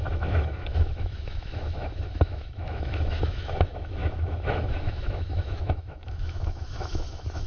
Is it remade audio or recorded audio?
remade